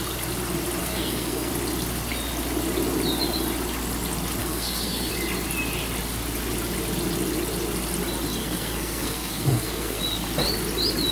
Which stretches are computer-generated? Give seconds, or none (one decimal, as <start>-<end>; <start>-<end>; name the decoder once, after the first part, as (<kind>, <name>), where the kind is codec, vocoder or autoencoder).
0.8-1.5 (codec, SNAC); 4.4-5.1; 8.4-10.0